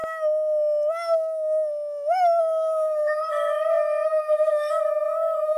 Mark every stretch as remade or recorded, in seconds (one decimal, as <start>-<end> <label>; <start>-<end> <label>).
0.0-2.4 recorded; 2.4-5.6 remade